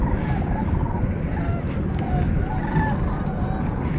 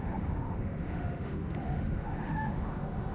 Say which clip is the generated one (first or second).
second